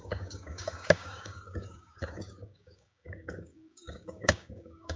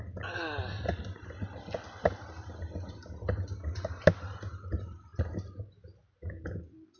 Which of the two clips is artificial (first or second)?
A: first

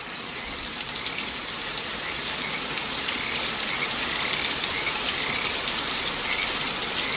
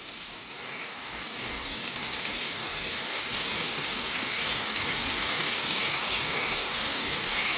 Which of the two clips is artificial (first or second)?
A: second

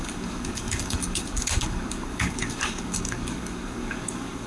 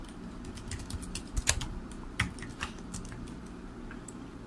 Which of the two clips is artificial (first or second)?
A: first